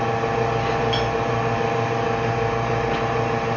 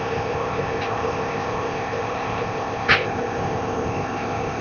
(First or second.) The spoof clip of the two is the second